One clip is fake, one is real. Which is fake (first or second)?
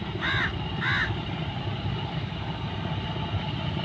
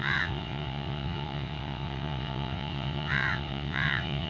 second